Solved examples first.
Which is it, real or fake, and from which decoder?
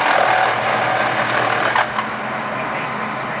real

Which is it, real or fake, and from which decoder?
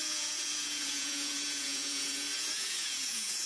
fake, vocoder, Vocos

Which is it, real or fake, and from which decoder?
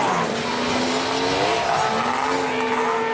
real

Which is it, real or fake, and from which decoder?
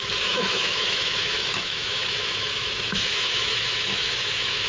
fake, autoencoder, DAC-VAE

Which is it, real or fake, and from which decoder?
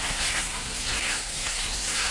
fake, codec, SNAC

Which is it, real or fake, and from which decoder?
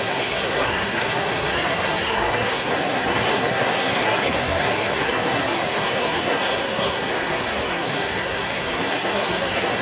fake, codec, SNAC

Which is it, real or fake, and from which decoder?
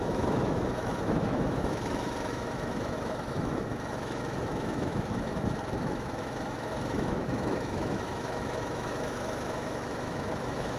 fake, autoencoder, DAC-VAE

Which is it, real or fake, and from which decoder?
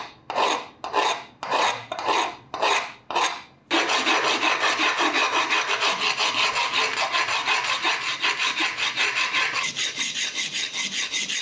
real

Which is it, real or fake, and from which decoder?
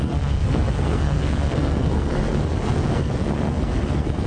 fake, codec, SNAC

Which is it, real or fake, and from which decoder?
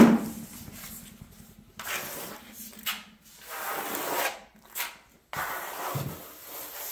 real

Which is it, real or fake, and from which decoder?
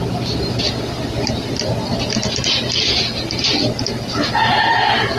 real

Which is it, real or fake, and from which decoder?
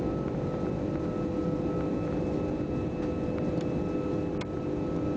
real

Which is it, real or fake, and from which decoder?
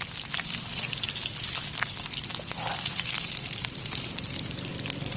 fake, vocoder, BigVGAN v2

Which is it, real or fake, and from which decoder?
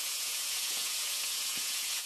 fake, vocoder, Vocos